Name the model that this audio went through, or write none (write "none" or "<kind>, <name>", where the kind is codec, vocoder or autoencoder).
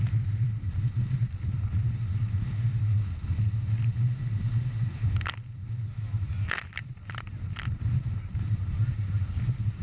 none